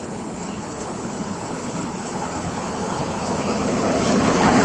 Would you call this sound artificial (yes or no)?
yes